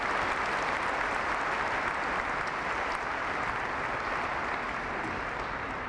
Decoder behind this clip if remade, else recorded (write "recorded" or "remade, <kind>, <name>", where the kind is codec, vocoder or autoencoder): recorded